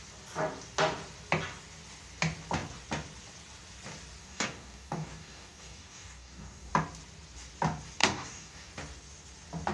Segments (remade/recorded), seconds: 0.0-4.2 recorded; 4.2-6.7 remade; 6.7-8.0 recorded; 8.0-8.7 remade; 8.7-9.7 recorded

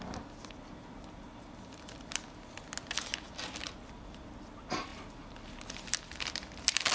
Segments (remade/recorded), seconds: 0.0-6.9 recorded